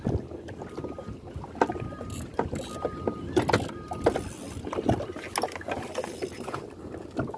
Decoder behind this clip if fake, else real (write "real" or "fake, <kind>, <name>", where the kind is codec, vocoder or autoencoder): real